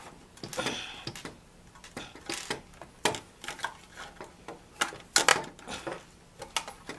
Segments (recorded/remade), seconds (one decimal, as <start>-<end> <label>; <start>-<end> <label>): 0.0-7.0 recorded